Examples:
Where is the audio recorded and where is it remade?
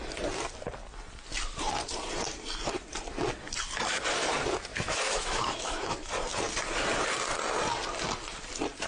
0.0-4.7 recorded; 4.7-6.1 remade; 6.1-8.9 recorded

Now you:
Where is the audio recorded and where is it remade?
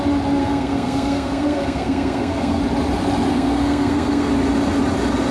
0.0-0.4 recorded; 0.4-2.6 remade; 2.6-3.3 recorded; 3.3-4.3 remade; 4.3-5.3 recorded